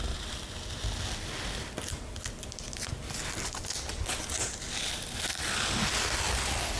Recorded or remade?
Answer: recorded